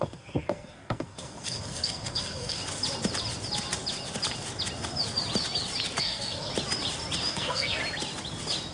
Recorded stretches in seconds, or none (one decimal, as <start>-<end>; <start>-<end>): 2.6-6.0; 6.5-7.3; 7.8-8.7